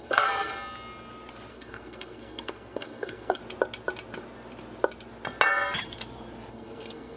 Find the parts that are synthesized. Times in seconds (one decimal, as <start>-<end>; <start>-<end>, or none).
0.0-0.5; 1.5-3.4; 6.5-7.2